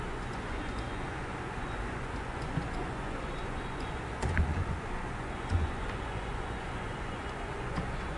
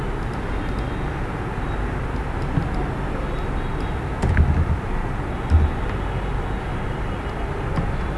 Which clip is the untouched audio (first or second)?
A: second